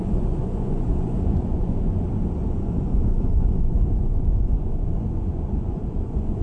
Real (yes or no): no